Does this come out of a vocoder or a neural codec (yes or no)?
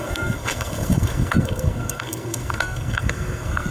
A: yes